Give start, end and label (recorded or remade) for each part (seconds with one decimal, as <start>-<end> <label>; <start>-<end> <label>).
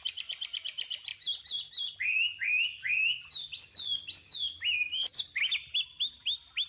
0.0-6.7 recorded